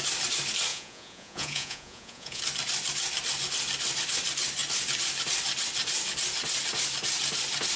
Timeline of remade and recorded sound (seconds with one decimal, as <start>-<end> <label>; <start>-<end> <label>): 0.0-0.7 recorded; 0.7-2.4 remade; 2.4-7.8 recorded